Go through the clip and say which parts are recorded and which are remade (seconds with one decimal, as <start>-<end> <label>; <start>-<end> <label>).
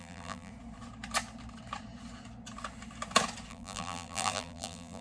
0.0-0.5 remade; 0.5-3.5 recorded; 3.5-5.0 remade